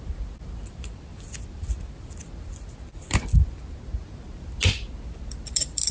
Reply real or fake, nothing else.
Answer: real